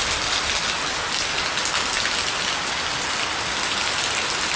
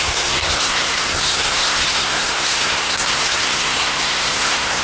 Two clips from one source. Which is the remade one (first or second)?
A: second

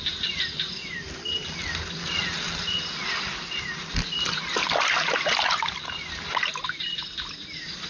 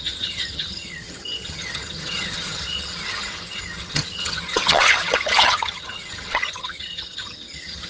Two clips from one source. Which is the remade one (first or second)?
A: second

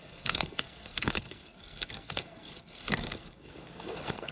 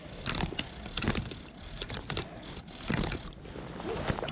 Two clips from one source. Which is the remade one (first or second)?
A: first